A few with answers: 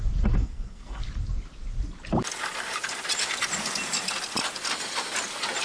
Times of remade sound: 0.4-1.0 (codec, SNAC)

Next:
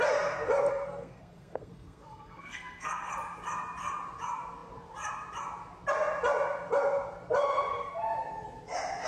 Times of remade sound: 0.7-3.1 (codec, SNAC)

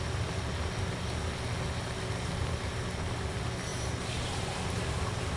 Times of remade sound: none